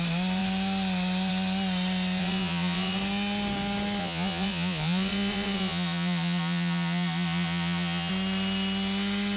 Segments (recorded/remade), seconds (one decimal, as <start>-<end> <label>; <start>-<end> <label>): 0.0-2.2 recorded; 2.2-3.0 remade; 3.0-4.0 recorded; 4.0-8.1 remade; 8.1-9.4 recorded

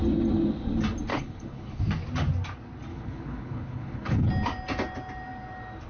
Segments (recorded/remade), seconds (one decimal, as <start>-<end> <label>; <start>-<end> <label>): 0.0-1.1 recorded; 1.1-1.8 remade; 1.8-2.9 recorded; 2.9-4.3 remade; 4.3-5.9 recorded

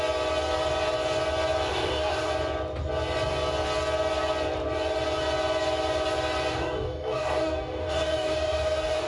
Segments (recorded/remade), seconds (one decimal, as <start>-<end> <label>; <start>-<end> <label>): 0.0-1.7 recorded; 1.7-2.3 remade; 2.3-6.5 recorded; 6.5-9.1 remade

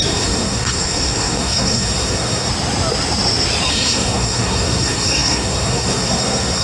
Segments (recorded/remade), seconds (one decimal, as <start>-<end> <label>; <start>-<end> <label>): 0.0-2.5 remade; 2.5-3.7 recorded; 3.7-6.6 remade